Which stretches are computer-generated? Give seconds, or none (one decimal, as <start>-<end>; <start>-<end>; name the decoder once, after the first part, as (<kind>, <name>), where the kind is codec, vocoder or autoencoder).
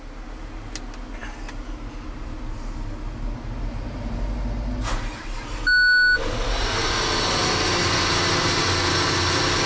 none